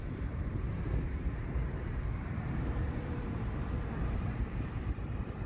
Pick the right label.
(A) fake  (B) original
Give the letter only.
A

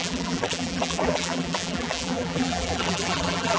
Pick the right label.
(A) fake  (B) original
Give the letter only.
A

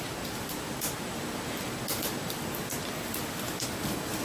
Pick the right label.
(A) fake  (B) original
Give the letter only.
B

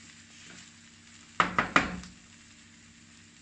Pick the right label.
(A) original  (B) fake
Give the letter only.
A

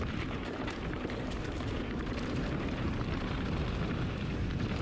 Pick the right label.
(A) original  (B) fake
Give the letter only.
B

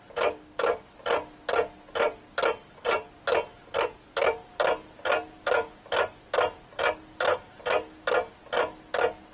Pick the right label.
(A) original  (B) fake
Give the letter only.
A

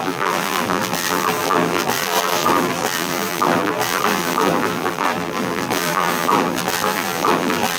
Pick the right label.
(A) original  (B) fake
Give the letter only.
B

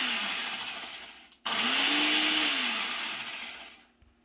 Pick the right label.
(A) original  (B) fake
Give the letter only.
A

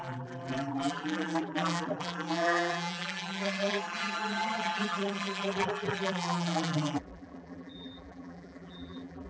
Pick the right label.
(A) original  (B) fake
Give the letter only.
B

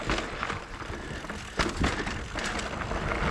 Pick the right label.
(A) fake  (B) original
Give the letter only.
B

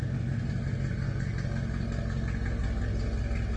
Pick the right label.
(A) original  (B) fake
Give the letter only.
A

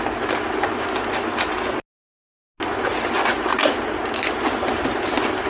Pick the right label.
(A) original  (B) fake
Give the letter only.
A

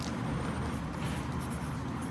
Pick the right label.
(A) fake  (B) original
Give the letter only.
B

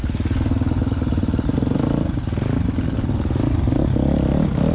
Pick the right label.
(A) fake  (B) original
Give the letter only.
B